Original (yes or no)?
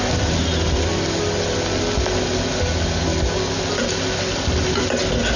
yes